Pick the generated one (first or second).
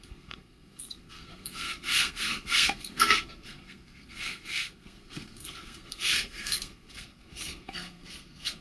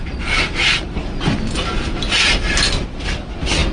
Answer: first